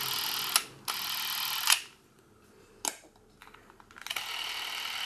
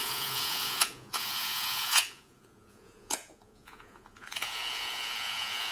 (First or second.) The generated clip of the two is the second